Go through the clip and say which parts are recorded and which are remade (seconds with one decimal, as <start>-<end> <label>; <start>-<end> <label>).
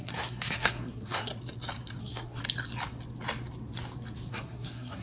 0.0-1.3 remade; 1.3-2.0 recorded; 2.0-2.4 remade; 2.4-4.3 recorded; 4.3-5.0 remade